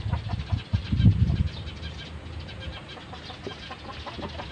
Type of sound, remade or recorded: recorded